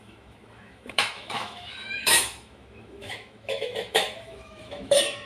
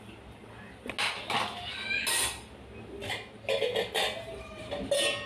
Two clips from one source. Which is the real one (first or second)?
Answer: second